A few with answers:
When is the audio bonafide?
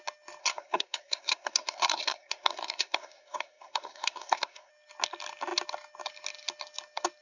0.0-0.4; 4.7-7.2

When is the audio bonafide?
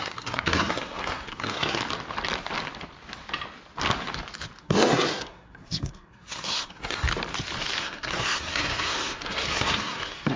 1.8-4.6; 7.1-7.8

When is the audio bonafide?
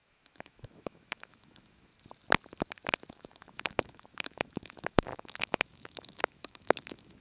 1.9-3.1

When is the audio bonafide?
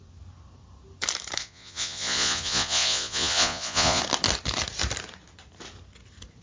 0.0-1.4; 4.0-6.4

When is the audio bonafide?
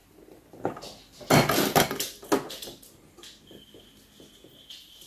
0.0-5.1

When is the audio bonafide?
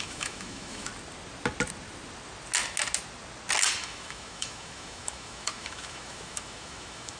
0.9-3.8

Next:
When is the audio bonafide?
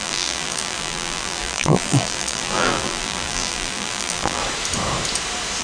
4.4-5.6